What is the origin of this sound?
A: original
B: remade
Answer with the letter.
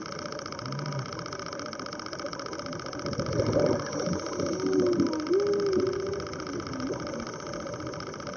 A